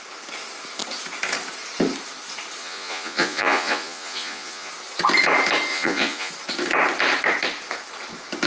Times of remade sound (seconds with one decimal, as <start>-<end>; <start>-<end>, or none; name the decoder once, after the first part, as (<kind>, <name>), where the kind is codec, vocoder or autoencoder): 2.6-4.7 (vocoder, Vocos); 5.7-6.3